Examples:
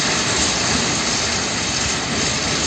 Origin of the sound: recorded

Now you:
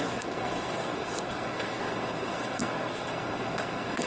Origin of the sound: remade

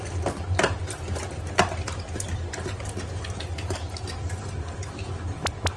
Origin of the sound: remade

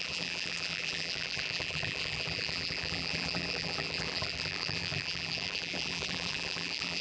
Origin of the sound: remade